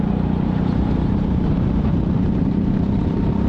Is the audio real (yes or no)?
no